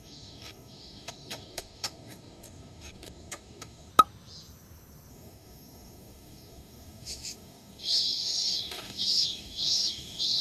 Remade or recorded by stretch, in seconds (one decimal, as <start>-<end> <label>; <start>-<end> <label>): 0.0-3.9 remade; 3.9-5.1 recorded; 5.1-10.4 remade